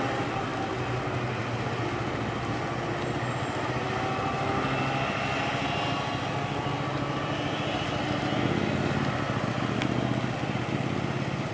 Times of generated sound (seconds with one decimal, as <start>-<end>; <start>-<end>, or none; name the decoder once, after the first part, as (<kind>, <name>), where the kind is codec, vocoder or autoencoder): none